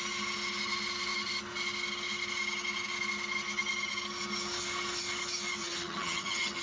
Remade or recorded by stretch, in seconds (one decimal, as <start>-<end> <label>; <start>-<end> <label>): 0.0-5.6 recorded; 5.6-6.6 remade